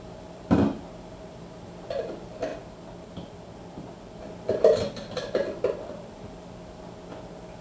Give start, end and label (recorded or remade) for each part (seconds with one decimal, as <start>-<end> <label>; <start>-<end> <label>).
0.0-7.6 recorded